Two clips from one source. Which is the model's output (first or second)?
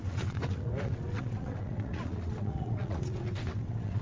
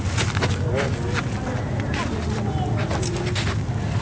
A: first